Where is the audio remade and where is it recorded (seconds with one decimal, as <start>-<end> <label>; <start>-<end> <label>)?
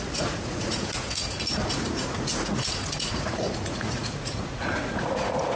0.0-1.2 remade; 1.2-1.7 recorded; 1.7-5.6 remade